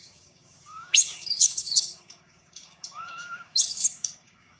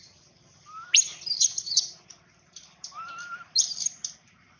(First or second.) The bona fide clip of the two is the second